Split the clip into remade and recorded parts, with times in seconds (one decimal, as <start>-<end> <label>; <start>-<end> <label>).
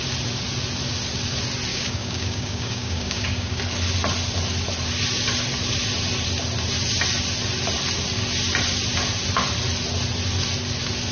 0.0-1.7 recorded; 1.7-3.6 remade; 3.6-11.1 recorded